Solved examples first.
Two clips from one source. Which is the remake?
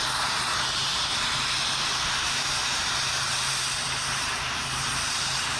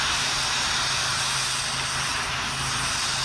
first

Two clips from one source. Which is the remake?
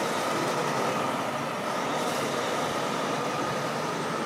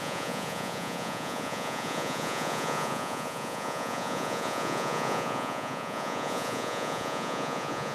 second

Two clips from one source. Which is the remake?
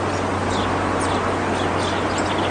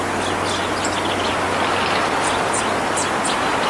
first